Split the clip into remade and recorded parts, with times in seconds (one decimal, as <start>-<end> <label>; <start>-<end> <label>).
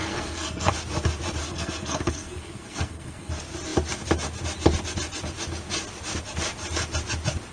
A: 0.0-0.7 remade; 0.7-1.4 recorded; 1.4-3.3 remade; 3.3-7.5 recorded